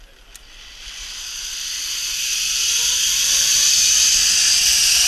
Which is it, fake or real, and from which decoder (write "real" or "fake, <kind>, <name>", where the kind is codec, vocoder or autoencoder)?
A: real